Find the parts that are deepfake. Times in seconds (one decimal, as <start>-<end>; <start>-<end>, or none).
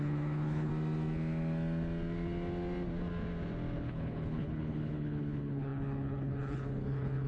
0.0-0.7; 3.8-7.3